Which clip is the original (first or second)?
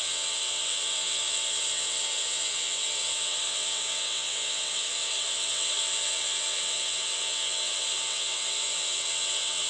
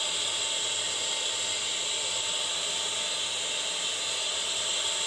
second